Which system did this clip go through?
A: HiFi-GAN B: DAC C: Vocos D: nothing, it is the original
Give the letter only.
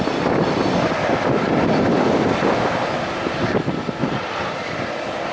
D